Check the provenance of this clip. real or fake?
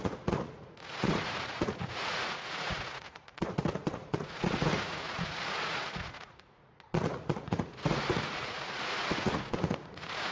fake